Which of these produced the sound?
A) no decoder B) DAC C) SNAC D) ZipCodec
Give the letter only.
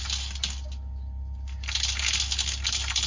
A